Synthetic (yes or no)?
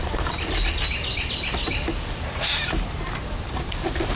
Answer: no